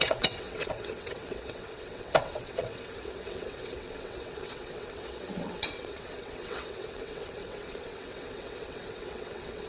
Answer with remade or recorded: remade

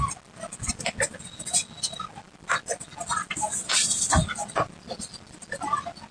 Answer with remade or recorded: recorded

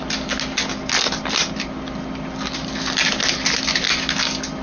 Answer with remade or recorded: recorded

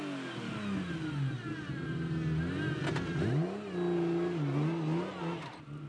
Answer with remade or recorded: recorded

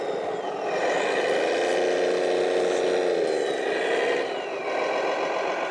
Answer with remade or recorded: recorded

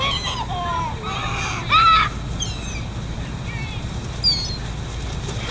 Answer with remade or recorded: recorded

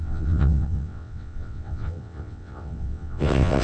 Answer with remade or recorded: remade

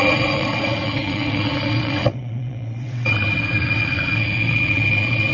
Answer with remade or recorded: remade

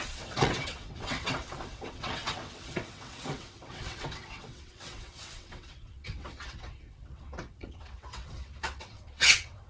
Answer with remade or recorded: remade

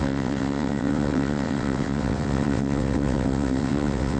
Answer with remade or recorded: remade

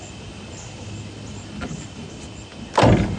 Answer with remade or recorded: recorded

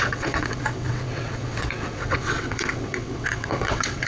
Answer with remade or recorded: remade